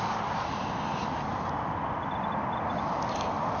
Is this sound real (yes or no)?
yes